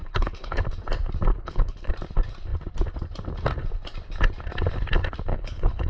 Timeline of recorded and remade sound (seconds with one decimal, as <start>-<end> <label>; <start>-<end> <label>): 0.0-0.6 remade; 0.6-1.3 recorded; 1.3-1.9 remade; 1.9-5.3 recorded; 5.3-5.9 remade